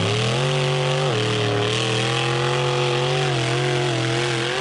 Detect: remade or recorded recorded